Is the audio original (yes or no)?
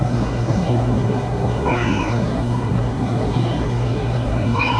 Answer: no